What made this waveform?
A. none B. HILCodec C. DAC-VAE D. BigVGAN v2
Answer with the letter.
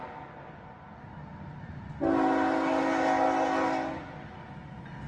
A